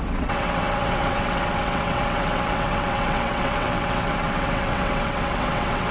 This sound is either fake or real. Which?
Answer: fake